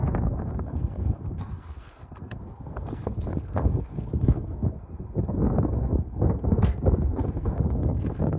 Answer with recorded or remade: remade